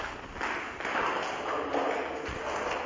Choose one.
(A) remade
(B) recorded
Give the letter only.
B